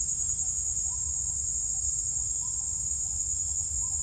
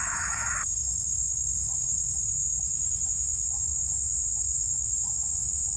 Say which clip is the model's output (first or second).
second